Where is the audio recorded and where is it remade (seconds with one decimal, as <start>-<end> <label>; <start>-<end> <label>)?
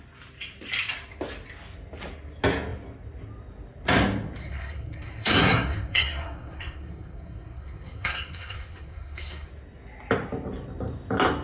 0.0-4.4 recorded; 4.4-9.5 remade; 9.5-11.4 recorded